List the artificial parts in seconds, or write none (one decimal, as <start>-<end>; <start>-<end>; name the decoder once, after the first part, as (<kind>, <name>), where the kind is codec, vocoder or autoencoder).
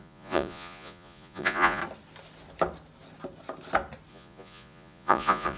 0.0-1.8 (vocoder, Vocos); 4.1-5.6